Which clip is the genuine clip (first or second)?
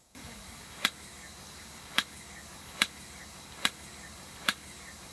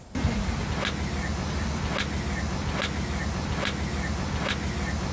second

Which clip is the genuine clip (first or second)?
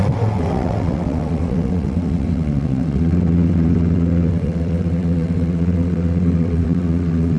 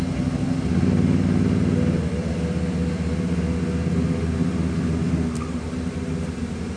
second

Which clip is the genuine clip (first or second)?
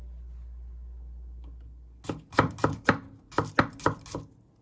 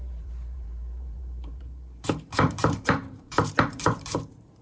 first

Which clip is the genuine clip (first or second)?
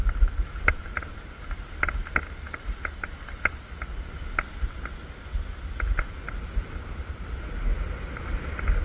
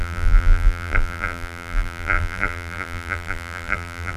first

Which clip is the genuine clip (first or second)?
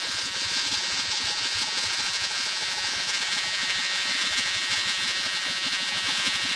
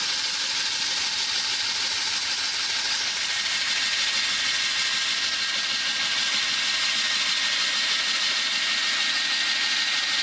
second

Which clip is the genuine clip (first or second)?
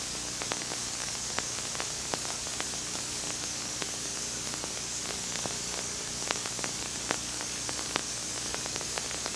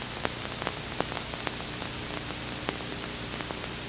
second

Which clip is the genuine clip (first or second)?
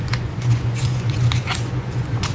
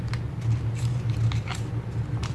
second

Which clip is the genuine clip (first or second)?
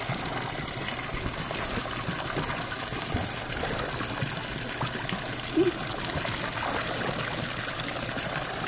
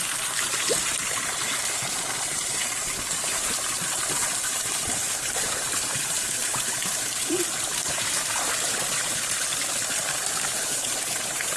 first